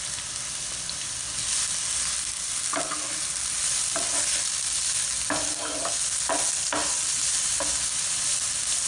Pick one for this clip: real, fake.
real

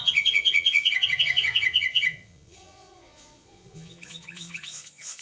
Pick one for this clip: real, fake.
fake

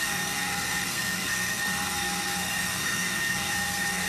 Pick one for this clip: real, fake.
fake